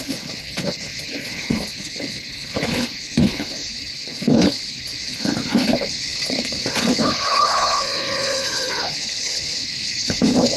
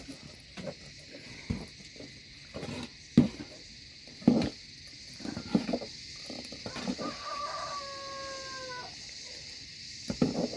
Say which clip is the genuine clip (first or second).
second